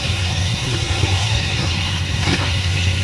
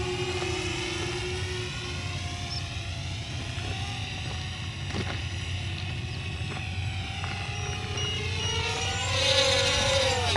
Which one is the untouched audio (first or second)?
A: second